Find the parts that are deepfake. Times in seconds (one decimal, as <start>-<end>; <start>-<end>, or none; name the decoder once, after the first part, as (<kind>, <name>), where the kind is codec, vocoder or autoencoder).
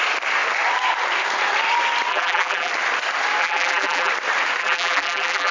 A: 2.1-2.7 (vocoder, BigVGAN v2); 3.4-4.1; 4.6-5.5